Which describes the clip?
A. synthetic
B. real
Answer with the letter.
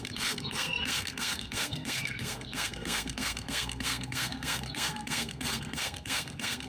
A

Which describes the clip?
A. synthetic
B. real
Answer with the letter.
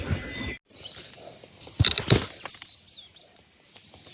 B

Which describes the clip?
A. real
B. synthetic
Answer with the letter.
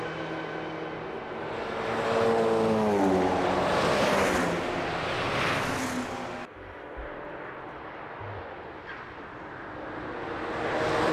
A